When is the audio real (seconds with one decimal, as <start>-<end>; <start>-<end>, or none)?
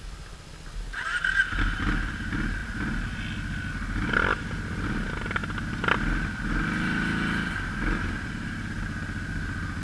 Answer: 0.0-9.8